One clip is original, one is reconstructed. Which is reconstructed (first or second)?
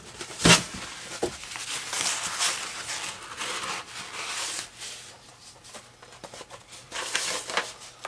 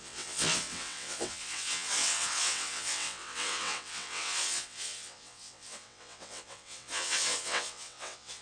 second